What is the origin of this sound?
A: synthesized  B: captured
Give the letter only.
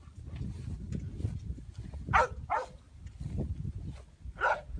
B